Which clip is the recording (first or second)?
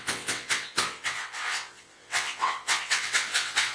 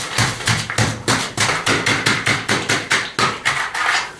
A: second